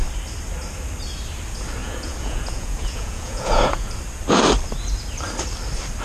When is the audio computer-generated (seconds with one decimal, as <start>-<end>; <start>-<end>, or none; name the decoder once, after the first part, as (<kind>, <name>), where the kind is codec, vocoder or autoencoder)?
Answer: 1.8-3.9 (vocoder, Vocos)